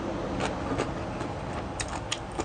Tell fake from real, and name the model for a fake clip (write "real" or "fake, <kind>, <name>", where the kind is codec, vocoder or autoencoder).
real